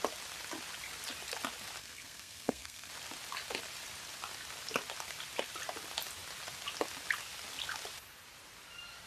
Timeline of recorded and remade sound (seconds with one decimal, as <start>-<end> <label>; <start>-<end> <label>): 0.0-1.8 recorded; 1.8-2.9 remade; 2.9-9.1 recorded

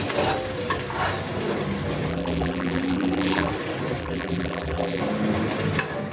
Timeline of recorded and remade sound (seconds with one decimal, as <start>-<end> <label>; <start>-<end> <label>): 0.0-2.1 recorded; 2.1-3.5 remade; 3.5-4.0 recorded; 4.0-5.0 remade; 5.0-6.1 recorded

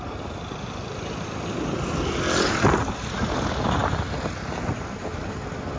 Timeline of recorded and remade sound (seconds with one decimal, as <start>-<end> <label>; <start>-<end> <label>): 0.0-5.8 recorded

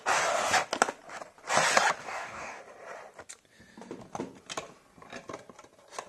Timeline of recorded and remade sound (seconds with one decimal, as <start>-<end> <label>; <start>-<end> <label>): 0.0-2.0 recorded; 2.0-2.6 remade; 2.6-6.1 recorded

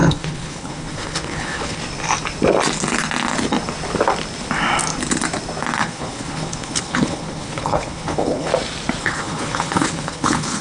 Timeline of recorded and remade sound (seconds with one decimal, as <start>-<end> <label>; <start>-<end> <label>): 0.0-1.8 remade; 1.8-5.8 recorded; 5.8-8.5 remade; 8.5-9.0 recorded; 9.0-10.6 remade